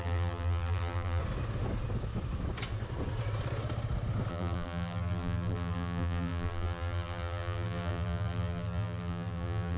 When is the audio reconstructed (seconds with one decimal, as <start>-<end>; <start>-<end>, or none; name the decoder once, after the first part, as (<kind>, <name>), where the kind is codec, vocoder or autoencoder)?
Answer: 0.0-1.2 (vocoder, BigVGAN v2); 4.3-9.8